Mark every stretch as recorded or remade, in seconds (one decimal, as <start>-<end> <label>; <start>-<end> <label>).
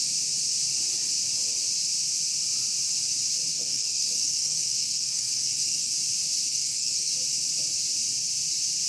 0.0-3.5 recorded; 3.5-5.9 remade; 5.9-6.5 recorded; 6.5-7.1 remade; 7.1-8.9 recorded